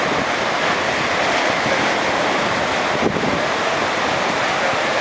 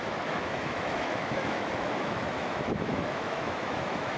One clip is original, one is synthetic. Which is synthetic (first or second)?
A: second